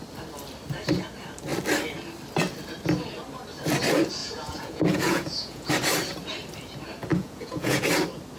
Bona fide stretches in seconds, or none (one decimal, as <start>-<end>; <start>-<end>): 0.0-4.2; 5.7-7.1; 7.9-8.4